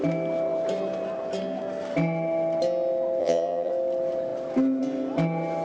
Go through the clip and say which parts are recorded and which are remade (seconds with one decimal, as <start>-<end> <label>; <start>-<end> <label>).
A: 0.0-3.2 recorded; 3.2-3.7 remade; 3.7-5.6 recorded